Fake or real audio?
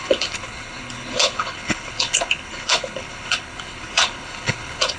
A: fake